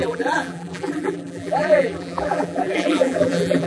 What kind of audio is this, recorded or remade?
remade